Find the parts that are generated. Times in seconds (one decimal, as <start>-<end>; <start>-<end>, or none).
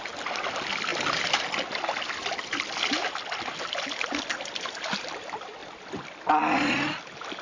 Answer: none